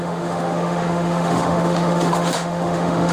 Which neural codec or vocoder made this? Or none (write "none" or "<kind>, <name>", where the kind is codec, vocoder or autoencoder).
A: autoencoder, DAC-VAE